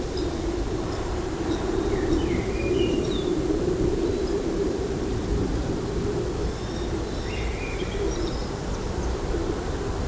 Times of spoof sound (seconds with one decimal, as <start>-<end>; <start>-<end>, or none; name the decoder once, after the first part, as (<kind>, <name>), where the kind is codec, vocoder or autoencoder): 0.0-6.4 (vocoder, BigVGAN v2); 7.2-10.1